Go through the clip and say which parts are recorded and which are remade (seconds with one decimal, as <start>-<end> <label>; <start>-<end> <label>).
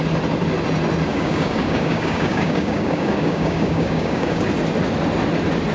0.0-1.1 recorded; 1.1-4.5 remade; 4.5-5.7 recorded